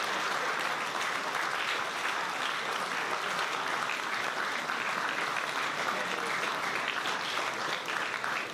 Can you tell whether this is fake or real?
real